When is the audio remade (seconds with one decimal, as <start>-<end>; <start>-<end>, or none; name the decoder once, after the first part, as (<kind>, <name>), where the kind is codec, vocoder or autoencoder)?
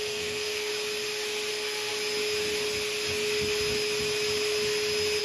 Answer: 0.0-0.7 (codec, SNAC); 1.5-1.9